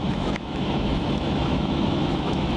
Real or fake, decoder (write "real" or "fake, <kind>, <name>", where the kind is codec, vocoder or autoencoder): fake, autoencoder, DAC-VAE